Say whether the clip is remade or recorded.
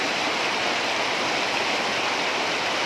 recorded